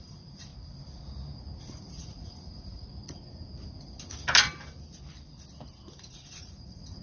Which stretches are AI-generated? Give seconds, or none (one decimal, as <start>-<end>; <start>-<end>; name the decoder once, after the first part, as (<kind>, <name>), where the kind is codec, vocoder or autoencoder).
0.0-0.5 (vocoder, Vocos); 1.9-2.9; 6.0-7.0